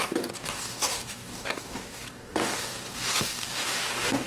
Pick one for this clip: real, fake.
fake